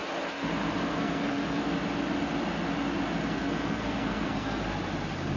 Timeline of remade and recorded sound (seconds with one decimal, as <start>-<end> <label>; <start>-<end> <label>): 0.0-0.9 recorded; 0.9-1.6 remade; 1.6-3.2 recorded; 3.2-4.6 remade; 4.6-5.4 recorded

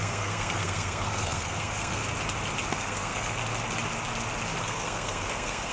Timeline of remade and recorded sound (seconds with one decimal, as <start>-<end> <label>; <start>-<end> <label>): 0.0-2.0 remade; 2.0-2.7 recorded; 2.7-3.4 remade; 3.4-4.6 recorded; 4.6-5.7 remade

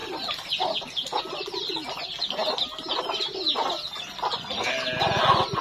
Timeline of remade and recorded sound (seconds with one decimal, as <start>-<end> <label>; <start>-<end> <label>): 0.0-5.6 recorded